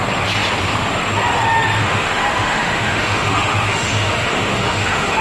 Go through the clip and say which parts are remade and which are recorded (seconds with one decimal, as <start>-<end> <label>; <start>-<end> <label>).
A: 0.0-1.8 recorded; 1.8-5.2 remade